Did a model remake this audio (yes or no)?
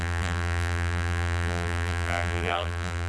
yes